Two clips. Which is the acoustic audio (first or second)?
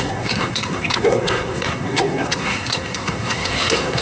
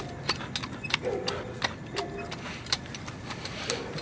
second